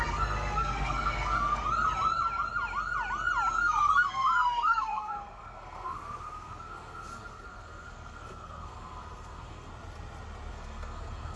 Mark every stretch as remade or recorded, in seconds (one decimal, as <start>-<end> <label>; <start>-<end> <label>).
0.0-1.6 remade; 1.6-3.5 recorded; 3.5-9.7 remade; 9.7-10.5 recorded; 10.5-11.4 remade